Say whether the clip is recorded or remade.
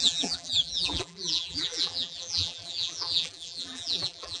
remade